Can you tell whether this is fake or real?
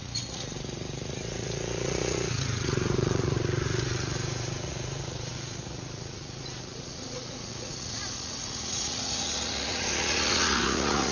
fake